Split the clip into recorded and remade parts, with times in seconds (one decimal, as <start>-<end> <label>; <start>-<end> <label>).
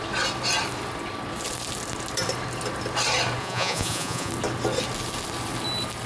0.0-3.4 recorded; 3.4-4.3 remade; 4.3-6.1 recorded